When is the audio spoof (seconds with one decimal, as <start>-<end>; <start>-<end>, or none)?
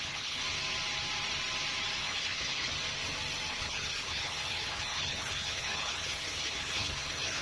0.0-0.4; 2.0-2.7; 3.5-7.4